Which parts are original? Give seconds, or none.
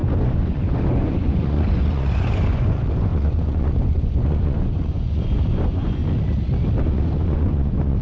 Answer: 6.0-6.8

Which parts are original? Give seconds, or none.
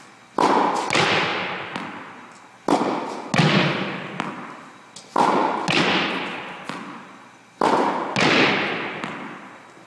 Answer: 0.0-9.9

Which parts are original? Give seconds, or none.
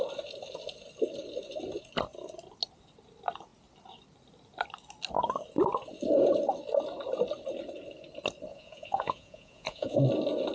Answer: 0.0-8.5; 10.0-10.5